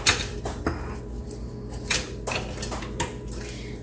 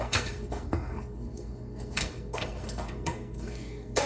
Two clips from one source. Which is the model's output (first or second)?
second